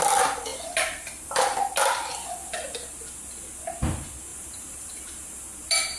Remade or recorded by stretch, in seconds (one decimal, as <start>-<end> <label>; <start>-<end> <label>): 0.0-4.3 recorded; 4.3-6.0 remade